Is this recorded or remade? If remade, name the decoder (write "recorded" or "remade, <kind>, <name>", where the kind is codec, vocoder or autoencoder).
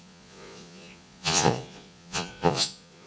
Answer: remade, vocoder, Vocos